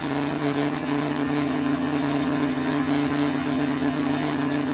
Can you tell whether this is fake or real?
fake